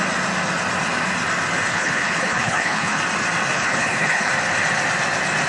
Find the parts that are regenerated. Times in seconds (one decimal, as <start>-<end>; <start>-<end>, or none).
1.7-3.0; 3.5-4.3